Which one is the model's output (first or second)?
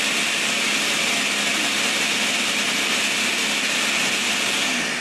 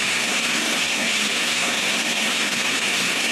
second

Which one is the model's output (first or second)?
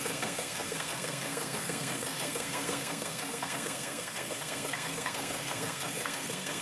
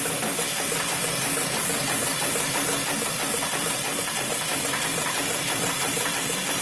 first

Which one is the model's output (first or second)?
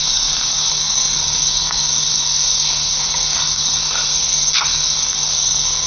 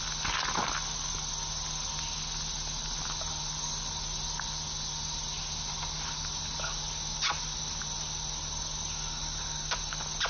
first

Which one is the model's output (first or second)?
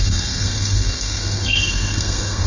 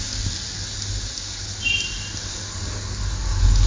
first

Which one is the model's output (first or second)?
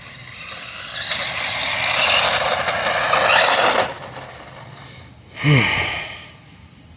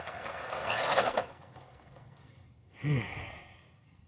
second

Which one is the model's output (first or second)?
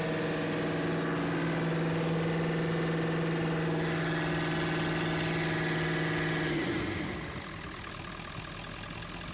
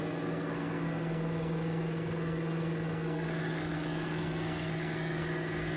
second